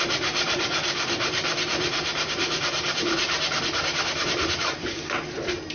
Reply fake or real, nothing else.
fake